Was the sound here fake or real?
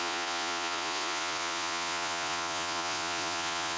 fake